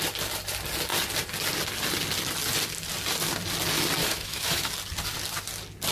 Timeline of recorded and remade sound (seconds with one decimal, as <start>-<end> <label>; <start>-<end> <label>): 0.0-4.0 recorded; 4.0-4.7 remade; 4.7-5.9 recorded